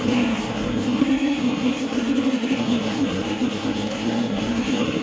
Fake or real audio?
fake